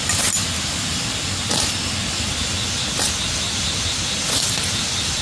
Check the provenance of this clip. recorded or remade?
recorded